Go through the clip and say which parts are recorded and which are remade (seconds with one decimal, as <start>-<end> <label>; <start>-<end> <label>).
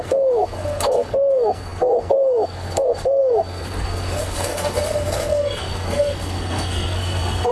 0.0-7.5 remade